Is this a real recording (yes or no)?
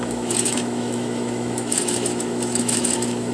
no